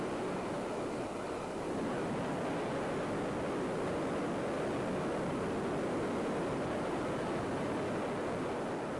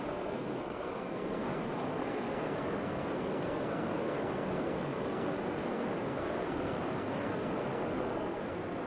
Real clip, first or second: first